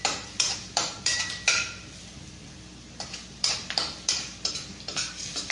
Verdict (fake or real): fake